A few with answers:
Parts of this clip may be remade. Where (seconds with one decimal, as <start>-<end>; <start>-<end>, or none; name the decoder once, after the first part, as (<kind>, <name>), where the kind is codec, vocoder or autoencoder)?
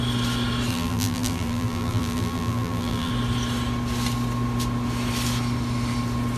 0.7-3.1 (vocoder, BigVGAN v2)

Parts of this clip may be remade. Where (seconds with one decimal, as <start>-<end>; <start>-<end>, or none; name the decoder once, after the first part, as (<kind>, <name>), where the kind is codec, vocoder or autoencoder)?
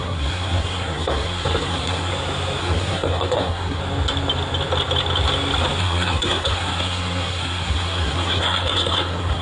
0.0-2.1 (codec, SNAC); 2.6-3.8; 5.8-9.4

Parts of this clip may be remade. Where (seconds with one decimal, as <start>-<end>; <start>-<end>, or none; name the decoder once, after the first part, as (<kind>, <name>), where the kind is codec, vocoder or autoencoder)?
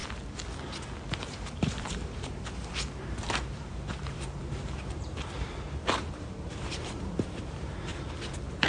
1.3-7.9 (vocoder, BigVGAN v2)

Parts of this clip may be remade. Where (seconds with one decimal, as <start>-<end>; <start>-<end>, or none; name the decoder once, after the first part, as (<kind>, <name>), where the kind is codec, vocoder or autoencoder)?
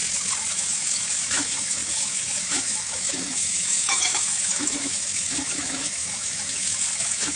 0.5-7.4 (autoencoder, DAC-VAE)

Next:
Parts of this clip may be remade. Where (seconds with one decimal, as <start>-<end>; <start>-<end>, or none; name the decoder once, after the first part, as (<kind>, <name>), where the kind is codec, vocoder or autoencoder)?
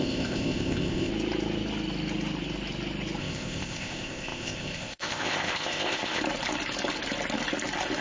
0.0-1.1 (codec, ZipCodec); 3.2-6.2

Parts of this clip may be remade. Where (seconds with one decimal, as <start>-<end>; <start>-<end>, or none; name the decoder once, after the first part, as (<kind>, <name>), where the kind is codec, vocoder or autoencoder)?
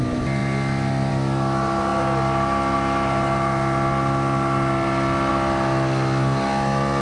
none